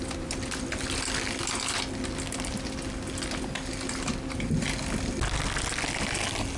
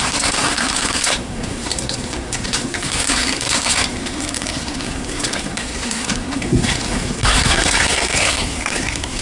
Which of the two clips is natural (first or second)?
first